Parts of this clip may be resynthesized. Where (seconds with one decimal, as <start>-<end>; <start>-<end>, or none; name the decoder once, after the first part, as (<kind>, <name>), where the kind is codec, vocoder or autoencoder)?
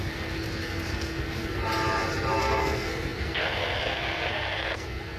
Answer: 0.0-1.6 (codec, SNAC); 2.4-5.2